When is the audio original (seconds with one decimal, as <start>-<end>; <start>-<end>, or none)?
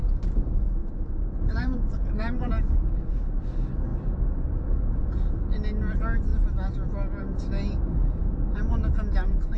0.0-0.8; 2.5-9.6